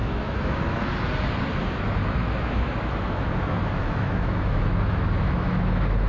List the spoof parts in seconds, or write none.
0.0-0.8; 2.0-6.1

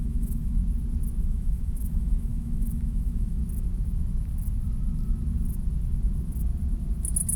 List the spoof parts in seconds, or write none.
0.0-0.6; 1.2-3.4

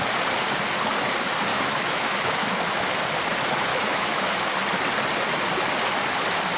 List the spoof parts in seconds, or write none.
1.5-3.0; 3.7-4.5

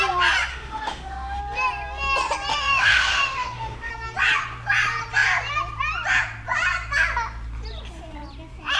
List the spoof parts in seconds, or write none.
0.5-1.4; 2.5-3.9

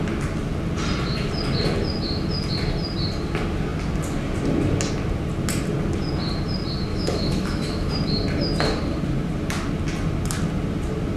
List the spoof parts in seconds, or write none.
6.9-7.9